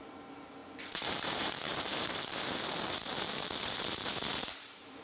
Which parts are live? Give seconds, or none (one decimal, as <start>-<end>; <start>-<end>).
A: none